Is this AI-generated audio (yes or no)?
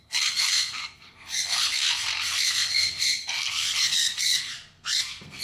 yes